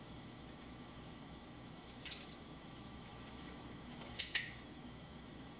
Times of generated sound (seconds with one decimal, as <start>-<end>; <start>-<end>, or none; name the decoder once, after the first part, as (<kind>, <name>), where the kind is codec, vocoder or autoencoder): 0.0-5.6 (autoencoder, DAC-VAE)